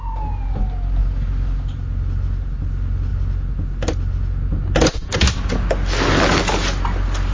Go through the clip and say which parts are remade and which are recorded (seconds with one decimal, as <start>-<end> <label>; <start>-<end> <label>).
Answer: 0.0-7.3 recorded